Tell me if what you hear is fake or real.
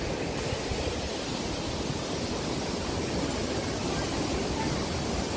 real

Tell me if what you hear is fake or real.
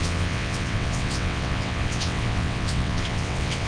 fake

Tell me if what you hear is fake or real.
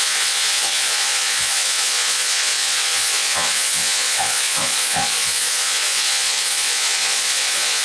fake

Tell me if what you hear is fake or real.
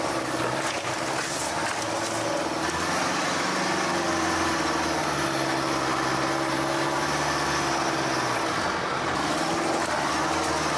real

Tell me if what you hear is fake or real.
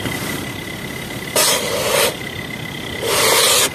real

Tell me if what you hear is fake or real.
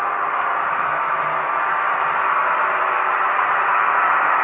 fake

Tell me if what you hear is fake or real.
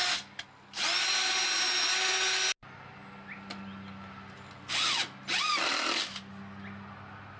real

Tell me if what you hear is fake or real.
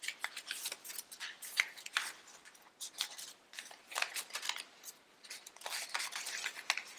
real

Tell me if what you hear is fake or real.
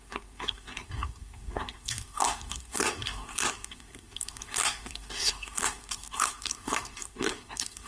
fake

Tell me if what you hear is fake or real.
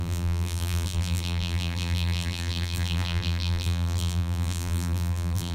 fake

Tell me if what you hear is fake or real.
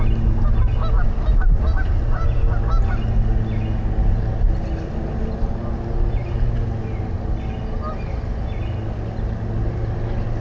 real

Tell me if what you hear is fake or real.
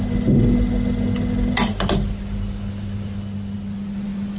real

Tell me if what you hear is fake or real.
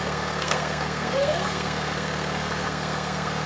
fake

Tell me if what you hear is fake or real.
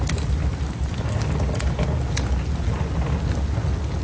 real